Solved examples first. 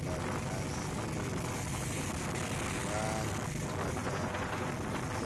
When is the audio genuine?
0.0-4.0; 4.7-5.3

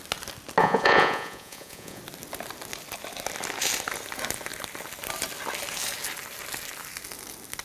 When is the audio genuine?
0.0-0.6; 2.0-7.6

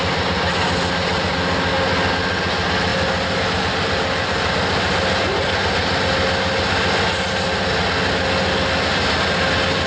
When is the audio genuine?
0.0-9.9

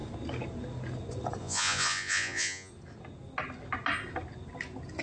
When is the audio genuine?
0.0-1.4; 2.7-5.0

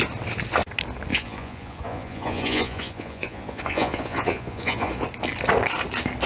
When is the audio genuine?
0.0-1.1; 4.9-6.3

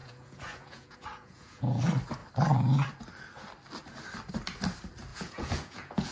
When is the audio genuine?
1.8-5.1